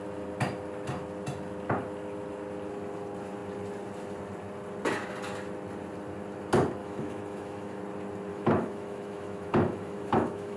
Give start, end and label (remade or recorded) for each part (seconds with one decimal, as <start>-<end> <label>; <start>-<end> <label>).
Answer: 0.0-6.8 recorded; 6.8-7.8 remade; 7.8-8.3 recorded; 8.3-10.6 remade